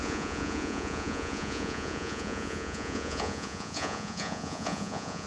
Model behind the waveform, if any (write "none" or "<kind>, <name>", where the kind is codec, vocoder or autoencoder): vocoder, Vocos